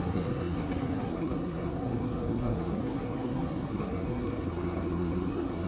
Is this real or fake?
fake